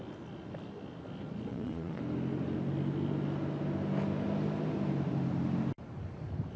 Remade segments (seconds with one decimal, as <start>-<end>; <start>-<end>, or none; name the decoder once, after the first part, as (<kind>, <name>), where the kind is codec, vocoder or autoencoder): 1.5-2.0 (vocoder, Vocos)